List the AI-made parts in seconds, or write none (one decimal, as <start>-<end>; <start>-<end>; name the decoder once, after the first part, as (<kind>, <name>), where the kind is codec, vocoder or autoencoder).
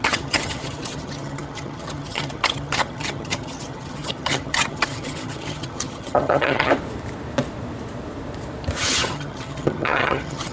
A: 0.0-6.7 (vocoder, HiFi-GAN); 8.8-10.5